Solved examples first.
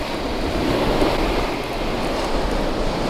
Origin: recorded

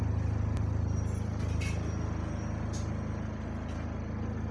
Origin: recorded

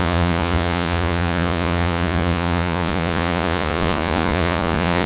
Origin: remade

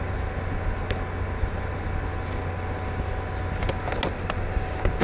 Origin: recorded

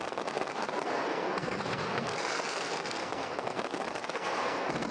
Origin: remade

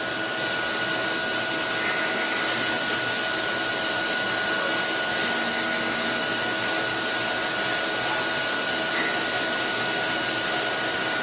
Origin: recorded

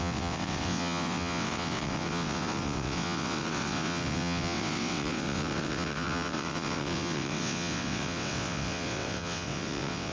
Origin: remade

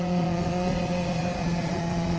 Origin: remade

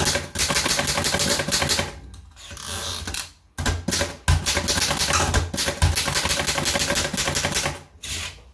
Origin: recorded